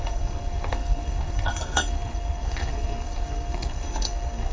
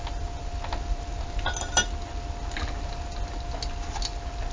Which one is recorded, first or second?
second